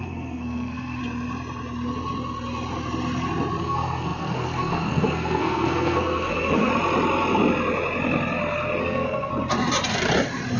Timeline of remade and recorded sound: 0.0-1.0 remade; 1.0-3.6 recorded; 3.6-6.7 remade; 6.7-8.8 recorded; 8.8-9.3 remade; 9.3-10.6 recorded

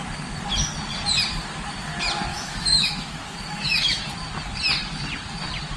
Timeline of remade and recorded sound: 0.0-2.3 recorded; 2.3-4.0 remade; 4.0-5.8 recorded

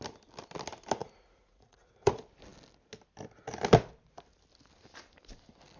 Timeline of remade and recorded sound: 0.0-1.0 recorded; 1.0-2.1 remade; 2.1-5.8 recorded

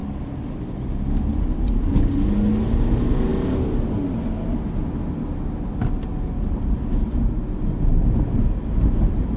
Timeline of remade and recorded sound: 0.0-9.4 recorded